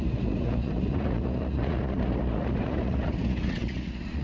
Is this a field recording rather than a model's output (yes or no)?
no